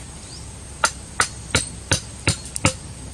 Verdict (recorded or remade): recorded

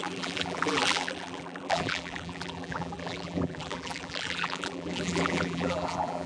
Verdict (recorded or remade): remade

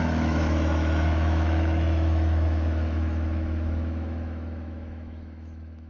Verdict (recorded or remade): remade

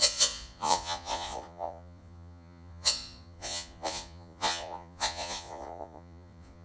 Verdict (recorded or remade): remade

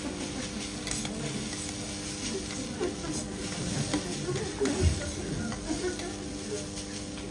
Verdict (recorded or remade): recorded